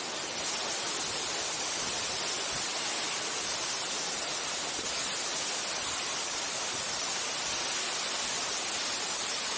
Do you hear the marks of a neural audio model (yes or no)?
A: no